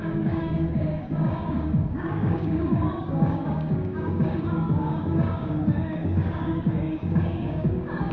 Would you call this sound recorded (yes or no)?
no